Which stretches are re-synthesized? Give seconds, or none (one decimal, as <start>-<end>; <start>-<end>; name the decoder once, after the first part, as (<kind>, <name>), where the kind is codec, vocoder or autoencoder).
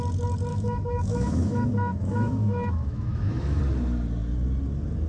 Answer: 0.5-3.6 (autoencoder, DAC-VAE)